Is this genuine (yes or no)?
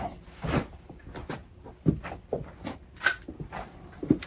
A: yes